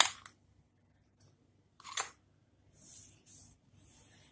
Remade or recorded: recorded